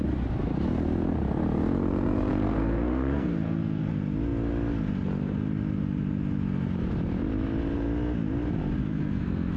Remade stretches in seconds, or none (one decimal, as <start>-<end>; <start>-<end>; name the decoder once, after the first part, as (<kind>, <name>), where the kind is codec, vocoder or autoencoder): 2.3-3.9 (codec, SNAC); 8.8-9.6

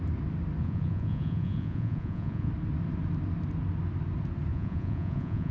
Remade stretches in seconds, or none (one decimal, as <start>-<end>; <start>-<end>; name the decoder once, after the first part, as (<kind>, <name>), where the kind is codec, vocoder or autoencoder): 0.6-2.5 (vocoder, Vocos); 4.5-5.5